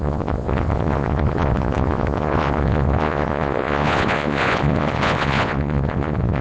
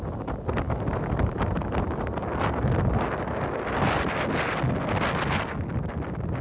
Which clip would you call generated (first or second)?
first